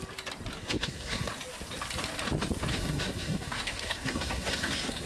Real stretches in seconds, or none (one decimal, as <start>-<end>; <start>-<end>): 0.0-0.6; 1.3-2.7